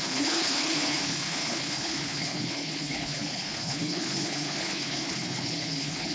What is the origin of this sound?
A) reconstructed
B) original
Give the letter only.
A